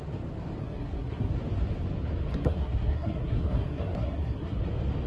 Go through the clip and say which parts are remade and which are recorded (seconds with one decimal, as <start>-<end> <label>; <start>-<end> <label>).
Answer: 0.0-0.6 recorded; 0.6-1.3 remade; 1.3-2.3 recorded; 2.3-4.6 remade; 4.6-5.1 recorded